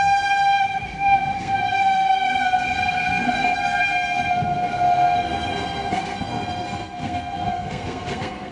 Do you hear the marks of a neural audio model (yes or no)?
yes